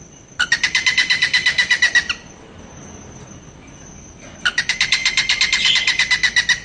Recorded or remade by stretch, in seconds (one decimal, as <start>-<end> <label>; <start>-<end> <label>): 0.0-6.6 recorded